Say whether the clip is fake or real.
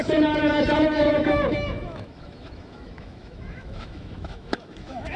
fake